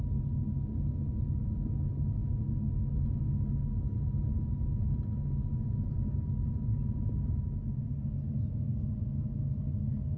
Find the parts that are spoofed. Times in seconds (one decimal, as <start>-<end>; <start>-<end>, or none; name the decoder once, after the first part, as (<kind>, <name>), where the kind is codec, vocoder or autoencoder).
none